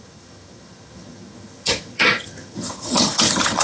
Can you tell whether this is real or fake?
fake